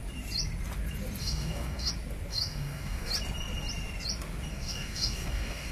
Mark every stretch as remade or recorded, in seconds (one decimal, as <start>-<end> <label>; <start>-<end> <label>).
0.0-1.2 recorded; 1.2-1.9 remade; 1.9-2.3 recorded; 2.3-3.1 remade; 3.1-4.5 recorded; 4.5-5.7 remade